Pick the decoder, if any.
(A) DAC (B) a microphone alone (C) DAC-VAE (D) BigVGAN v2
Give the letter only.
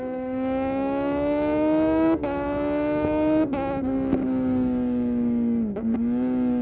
A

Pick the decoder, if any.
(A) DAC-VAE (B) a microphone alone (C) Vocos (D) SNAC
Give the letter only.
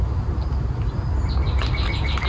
B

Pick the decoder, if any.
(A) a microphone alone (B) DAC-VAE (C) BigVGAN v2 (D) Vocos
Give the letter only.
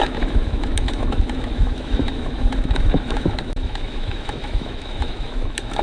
B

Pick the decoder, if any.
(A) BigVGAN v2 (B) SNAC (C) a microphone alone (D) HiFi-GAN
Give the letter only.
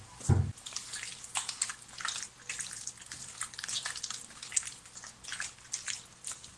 C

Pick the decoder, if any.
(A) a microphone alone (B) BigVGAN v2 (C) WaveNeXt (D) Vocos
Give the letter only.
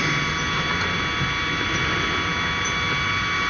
A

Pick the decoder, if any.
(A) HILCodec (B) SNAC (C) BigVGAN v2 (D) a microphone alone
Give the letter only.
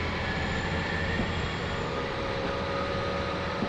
C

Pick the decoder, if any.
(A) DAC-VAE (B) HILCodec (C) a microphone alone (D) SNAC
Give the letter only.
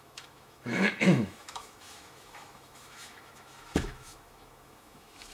A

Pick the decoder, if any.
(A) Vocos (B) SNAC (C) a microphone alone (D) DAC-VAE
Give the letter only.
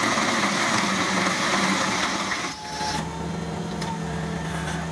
C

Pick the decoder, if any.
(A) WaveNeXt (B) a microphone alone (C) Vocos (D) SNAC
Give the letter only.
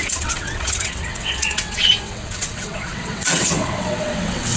A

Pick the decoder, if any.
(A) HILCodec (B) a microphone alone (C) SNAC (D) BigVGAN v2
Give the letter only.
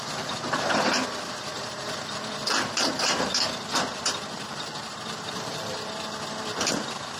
D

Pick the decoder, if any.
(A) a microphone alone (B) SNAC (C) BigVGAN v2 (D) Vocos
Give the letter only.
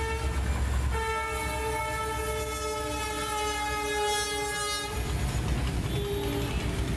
A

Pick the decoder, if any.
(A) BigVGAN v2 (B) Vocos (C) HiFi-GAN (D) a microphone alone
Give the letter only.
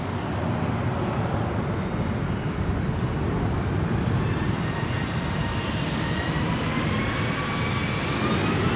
D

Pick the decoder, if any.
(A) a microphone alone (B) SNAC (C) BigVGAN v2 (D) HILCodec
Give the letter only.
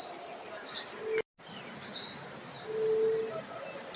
A